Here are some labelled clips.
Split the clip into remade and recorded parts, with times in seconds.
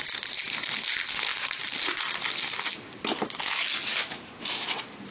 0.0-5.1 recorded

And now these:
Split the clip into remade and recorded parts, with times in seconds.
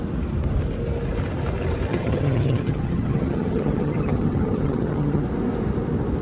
0.0-1.9 recorded; 1.9-5.2 remade; 5.2-6.2 recorded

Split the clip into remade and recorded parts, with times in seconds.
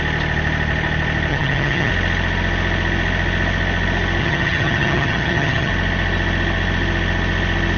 0.0-1.3 recorded; 1.3-1.9 remade; 1.9-4.2 recorded; 4.2-5.7 remade; 5.7-7.8 recorded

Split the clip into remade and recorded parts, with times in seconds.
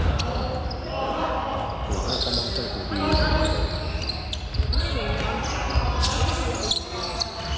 0.0-7.6 recorded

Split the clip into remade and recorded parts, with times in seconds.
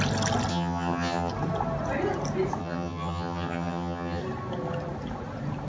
0.0-0.5 recorded; 0.5-1.3 remade; 1.3-2.6 recorded; 2.6-4.2 remade; 4.2-5.7 recorded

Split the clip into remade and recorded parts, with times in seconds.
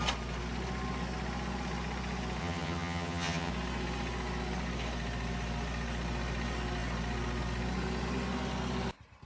0.0-2.4 recorded; 2.4-3.5 remade; 3.5-9.3 recorded